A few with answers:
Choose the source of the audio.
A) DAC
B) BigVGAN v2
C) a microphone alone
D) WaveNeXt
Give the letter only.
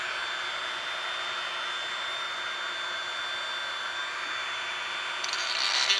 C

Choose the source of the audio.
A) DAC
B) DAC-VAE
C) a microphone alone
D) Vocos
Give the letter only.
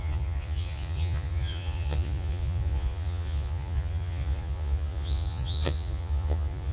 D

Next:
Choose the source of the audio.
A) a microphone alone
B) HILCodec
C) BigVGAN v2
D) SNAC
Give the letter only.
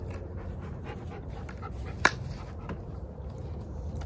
A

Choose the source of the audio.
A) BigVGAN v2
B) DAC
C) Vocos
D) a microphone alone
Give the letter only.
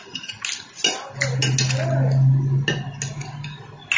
D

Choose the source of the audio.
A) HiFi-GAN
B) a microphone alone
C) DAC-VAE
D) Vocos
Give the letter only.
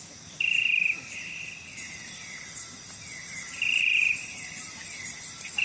B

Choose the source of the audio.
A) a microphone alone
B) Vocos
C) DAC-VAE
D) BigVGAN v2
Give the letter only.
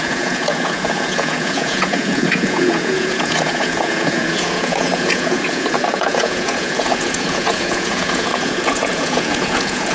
B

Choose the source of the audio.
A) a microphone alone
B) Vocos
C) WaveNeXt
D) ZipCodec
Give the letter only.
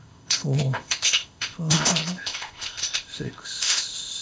D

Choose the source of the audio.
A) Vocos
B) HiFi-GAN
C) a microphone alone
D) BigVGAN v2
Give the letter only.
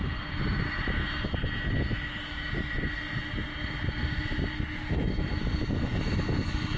C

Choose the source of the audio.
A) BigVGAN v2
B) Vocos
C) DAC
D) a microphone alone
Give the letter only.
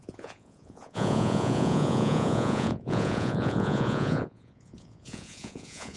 B